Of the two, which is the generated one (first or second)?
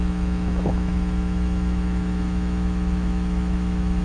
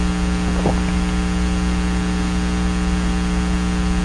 first